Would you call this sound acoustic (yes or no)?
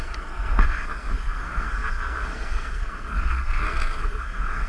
no